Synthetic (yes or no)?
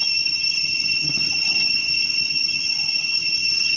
yes